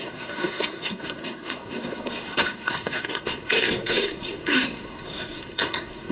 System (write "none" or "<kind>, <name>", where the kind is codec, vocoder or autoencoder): codec, SNAC